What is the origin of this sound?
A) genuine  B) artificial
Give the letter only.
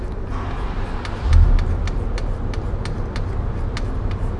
A